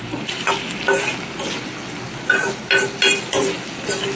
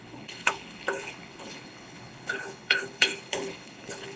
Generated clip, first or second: second